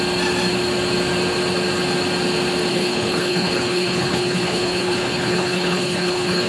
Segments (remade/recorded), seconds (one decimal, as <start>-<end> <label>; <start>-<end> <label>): 0.0-2.7 recorded; 2.7-6.5 remade